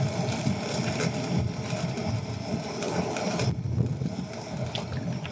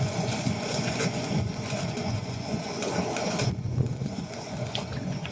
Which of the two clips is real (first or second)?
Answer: first